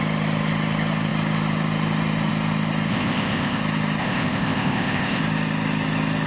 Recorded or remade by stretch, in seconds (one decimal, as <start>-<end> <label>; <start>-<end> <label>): 0.0-2.9 recorded; 2.9-3.6 remade; 3.6-4.0 recorded; 4.0-5.2 remade; 5.2-6.3 recorded